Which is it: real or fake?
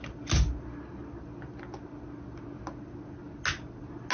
real